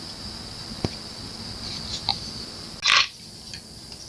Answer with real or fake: real